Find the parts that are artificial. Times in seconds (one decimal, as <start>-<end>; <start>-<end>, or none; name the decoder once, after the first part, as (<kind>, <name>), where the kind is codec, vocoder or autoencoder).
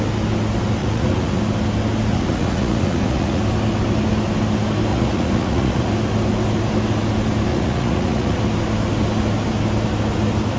0.8-1.4 (vocoder, Vocos); 2.1-3.4; 4.9-5.9; 7.5-8.4